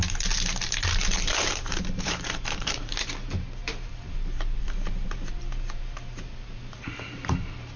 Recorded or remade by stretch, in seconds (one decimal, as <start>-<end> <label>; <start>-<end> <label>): 0.0-1.0 recorded; 1.0-3.1 remade; 3.1-3.6 recorded; 3.6-7.3 remade; 7.3-7.8 recorded

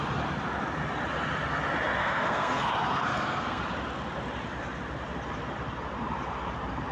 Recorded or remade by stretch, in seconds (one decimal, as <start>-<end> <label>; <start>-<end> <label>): 0.0-2.0 recorded; 2.0-2.7 remade; 2.7-3.1 recorded; 3.1-3.6 remade; 3.6-6.9 recorded

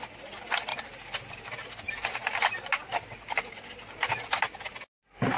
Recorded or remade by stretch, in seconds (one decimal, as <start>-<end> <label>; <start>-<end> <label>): 0.0-5.4 recorded

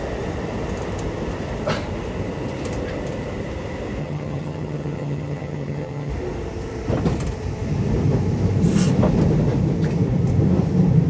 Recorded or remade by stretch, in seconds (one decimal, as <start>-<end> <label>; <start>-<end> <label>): 0.0-4.0 recorded; 4.0-6.1 remade; 6.1-11.1 recorded

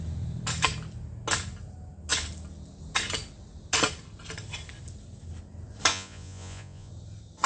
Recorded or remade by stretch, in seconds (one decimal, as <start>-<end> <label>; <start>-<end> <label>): 0.0-5.9 recorded; 5.9-6.9 remade; 6.9-7.5 recorded

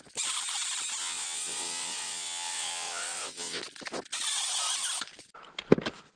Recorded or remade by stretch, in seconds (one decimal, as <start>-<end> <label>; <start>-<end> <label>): 0.0-1.0 recorded; 1.0-3.6 remade; 3.6-6.2 recorded

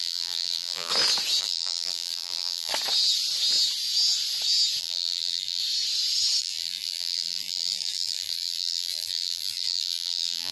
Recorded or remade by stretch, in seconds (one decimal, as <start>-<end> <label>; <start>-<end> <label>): 0.0-0.9 remade; 0.9-1.4 recorded; 1.4-2.7 remade; 2.7-4.8 recorded; 4.8-5.6 remade; 5.6-6.4 recorded; 6.4-10.5 remade

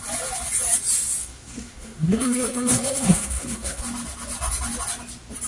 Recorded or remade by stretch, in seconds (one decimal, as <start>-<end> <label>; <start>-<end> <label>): 0.0-1.2 recorded; 1.2-3.8 remade; 3.8-5.5 recorded